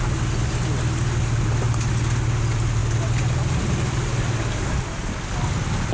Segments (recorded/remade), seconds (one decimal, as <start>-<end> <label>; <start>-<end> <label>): 0.0-5.9 recorded